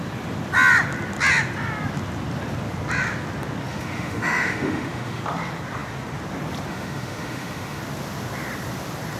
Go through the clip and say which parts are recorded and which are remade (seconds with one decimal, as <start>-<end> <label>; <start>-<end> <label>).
0.0-3.7 recorded; 3.7-5.2 remade; 5.2-6.7 recorded; 6.7-7.8 remade; 7.8-9.2 recorded